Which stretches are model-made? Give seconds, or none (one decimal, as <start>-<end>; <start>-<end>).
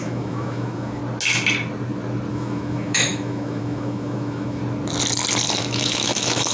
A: 0.0-1.0; 2.3-4.6; 5.6-6.5